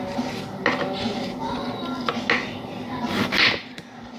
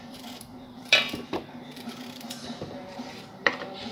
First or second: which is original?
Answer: first